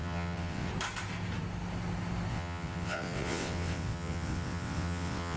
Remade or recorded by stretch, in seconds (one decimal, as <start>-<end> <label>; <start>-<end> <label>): 0.0-0.7 remade; 0.7-2.3 recorded; 2.3-5.4 remade